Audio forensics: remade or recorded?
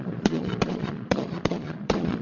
remade